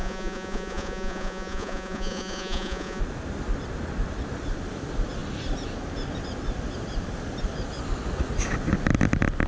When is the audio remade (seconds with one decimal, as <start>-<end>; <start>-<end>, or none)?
0.0-3.0